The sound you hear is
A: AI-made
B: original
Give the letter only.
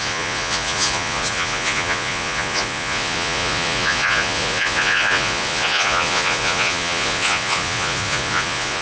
A